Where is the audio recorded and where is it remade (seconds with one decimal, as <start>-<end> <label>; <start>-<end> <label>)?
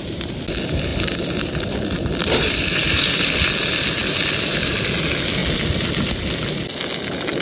0.0-0.9 recorded; 0.9-3.5 remade; 3.5-5.4 recorded; 5.4-6.0 remade; 6.0-7.4 recorded